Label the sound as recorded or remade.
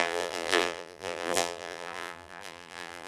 remade